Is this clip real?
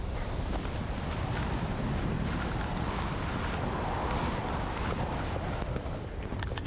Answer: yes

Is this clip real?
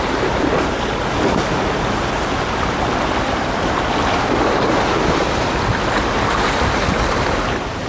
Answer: no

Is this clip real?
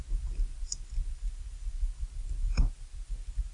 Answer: yes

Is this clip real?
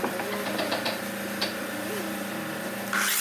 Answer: yes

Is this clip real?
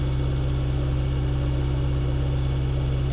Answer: yes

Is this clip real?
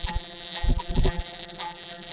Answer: no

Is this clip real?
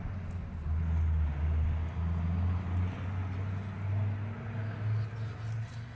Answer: yes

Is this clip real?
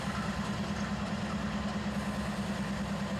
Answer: yes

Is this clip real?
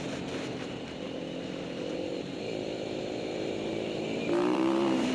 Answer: no